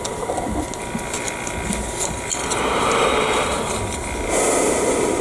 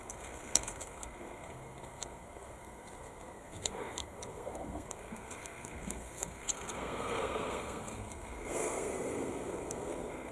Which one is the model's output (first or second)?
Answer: second